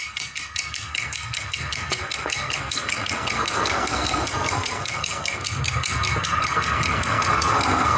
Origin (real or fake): fake